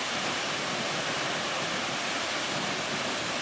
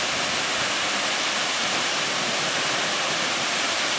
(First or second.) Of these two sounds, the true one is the first